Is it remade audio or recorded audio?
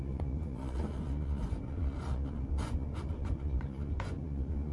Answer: remade